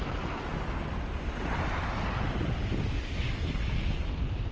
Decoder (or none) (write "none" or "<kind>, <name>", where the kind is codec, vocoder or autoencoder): none